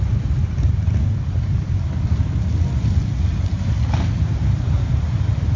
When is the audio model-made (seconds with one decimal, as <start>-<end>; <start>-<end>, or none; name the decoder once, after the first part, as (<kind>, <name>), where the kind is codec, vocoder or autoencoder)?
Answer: none